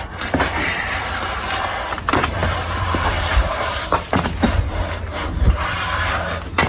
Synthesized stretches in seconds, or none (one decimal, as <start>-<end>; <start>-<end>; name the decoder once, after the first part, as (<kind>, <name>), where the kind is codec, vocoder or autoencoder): 0.0-6.7 (vocoder, BigVGAN v2)